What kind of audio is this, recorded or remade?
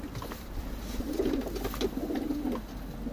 recorded